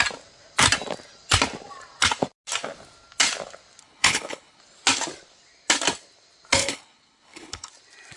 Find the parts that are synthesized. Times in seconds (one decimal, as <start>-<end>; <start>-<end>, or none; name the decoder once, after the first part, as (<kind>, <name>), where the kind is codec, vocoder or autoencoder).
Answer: 3.8-4.6 (codec, HILCodec); 6.6-7.7